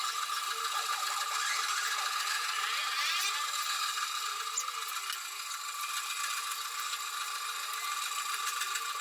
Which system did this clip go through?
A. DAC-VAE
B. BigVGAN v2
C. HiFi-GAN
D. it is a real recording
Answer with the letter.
D